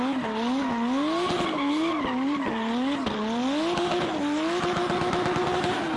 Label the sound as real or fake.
real